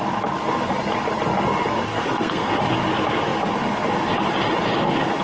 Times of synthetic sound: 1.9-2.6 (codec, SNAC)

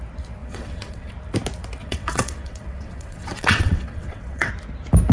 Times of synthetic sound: 0.4-1.1 (vocoder, WaveNeXt); 1.8-4.5

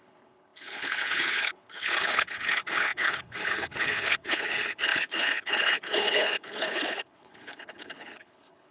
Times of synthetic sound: 0.0-8.7 (codec, HILCodec)